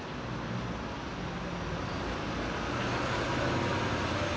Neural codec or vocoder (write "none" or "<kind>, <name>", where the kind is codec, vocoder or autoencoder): none